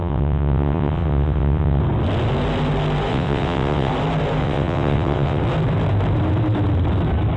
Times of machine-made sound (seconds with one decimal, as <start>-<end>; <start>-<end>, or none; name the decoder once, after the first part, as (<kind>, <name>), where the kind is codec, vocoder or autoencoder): 0.0-1.8 (vocoder, WaveNeXt); 3.1-3.9; 4.4-5.4